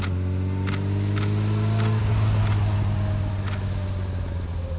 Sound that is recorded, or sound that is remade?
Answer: recorded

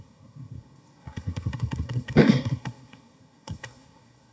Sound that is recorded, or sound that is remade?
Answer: remade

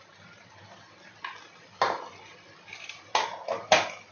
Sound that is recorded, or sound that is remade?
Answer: recorded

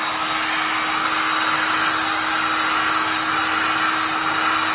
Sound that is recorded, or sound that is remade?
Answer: recorded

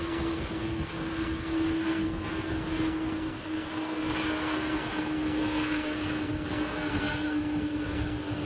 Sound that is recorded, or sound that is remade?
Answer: remade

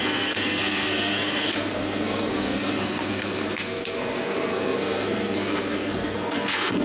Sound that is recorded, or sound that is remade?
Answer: remade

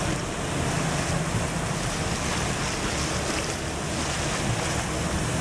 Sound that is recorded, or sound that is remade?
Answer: recorded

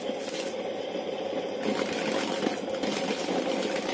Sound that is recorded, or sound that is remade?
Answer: recorded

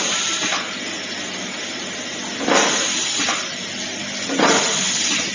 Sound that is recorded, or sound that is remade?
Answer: recorded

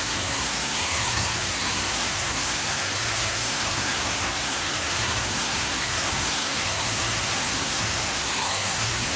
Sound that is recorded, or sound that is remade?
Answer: remade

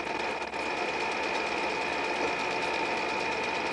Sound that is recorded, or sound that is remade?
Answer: recorded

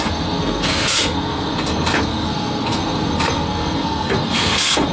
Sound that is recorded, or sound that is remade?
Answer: remade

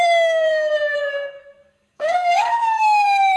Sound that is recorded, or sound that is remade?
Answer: remade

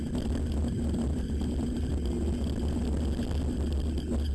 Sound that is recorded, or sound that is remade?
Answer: recorded